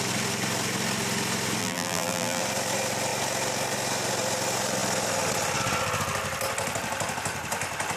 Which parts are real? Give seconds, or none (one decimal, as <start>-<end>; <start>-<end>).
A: 0.0-1.6; 2.4-8.0